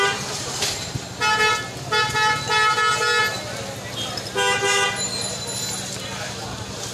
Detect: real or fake real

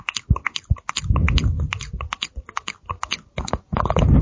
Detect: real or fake real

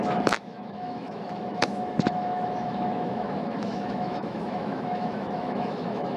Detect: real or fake fake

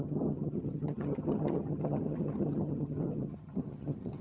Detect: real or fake fake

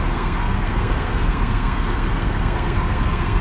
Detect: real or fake fake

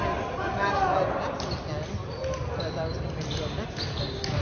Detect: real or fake real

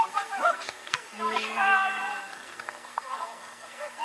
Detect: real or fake fake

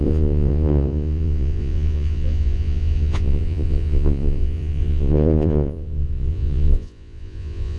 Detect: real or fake fake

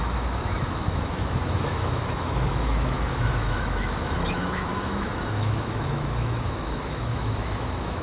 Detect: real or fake fake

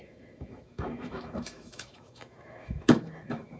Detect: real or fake fake